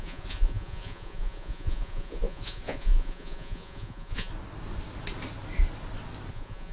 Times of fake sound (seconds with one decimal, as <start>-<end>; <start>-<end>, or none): 0.0-4.3; 6.3-6.7